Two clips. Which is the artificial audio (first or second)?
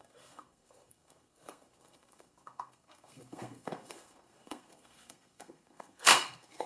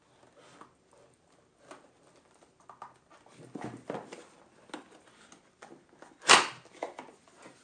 first